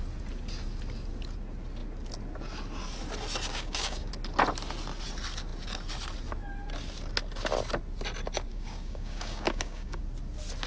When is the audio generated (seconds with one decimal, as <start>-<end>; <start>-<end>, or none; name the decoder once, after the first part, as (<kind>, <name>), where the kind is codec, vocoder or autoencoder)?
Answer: 3.5-4.1 (codec, DAC); 8.5-10.0